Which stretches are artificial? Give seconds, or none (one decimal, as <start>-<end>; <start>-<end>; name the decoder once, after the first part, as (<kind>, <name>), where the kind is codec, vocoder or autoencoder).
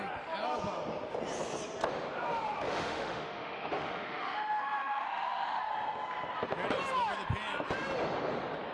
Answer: 2.7-5.6 (autoencoder, DAC-VAE)